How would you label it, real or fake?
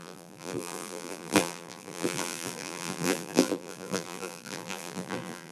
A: fake